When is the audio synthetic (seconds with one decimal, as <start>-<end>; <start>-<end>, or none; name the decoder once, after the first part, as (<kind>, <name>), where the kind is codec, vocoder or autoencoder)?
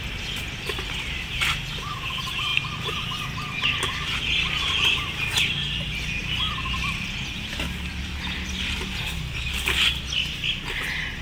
none